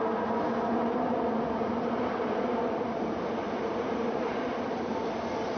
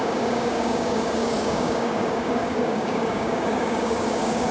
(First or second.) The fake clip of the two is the second